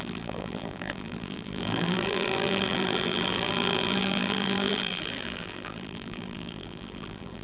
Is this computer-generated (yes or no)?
yes